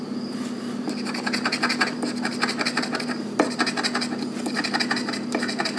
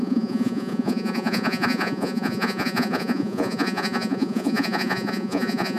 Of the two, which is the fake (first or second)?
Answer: second